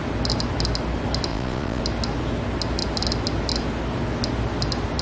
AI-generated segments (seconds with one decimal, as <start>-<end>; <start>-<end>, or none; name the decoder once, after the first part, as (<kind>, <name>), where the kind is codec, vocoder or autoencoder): 1.3-1.8 (vocoder, Vocos)